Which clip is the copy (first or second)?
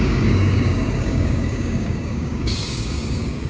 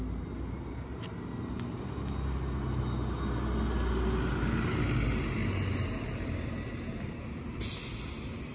first